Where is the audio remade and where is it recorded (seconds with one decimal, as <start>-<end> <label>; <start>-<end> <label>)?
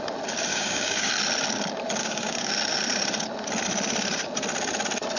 0.0-0.5 recorded; 0.5-1.1 remade; 1.1-2.0 recorded; 2.0-2.5 remade; 2.5-5.2 recorded